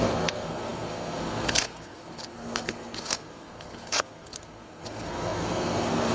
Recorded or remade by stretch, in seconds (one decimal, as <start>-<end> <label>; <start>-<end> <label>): 0.0-6.1 remade